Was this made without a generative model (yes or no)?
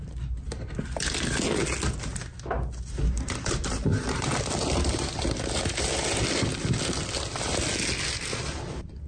yes